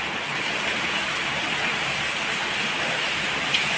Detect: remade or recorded recorded